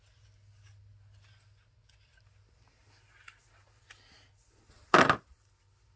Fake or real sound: real